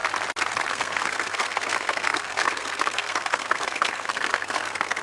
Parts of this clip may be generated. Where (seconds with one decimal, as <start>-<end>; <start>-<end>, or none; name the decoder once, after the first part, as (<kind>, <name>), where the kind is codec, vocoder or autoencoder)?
0.7-5.0 (codec, SNAC)